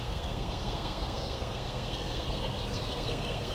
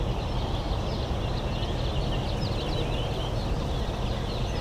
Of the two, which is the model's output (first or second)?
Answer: first